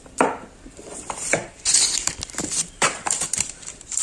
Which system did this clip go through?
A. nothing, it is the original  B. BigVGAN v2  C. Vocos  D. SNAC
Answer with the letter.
B